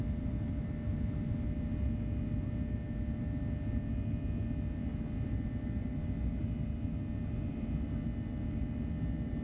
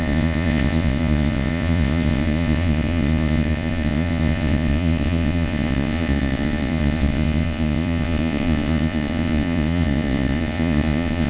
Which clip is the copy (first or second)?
second